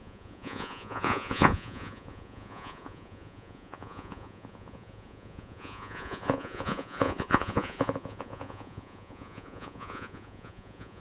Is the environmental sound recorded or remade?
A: remade